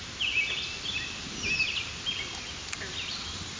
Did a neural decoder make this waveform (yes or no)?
no